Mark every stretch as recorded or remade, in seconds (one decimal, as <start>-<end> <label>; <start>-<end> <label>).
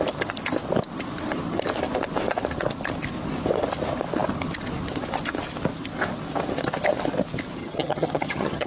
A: 0.0-7.6 recorded; 7.6-8.7 remade